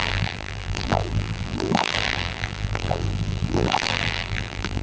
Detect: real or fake fake